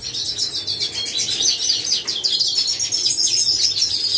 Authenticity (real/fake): real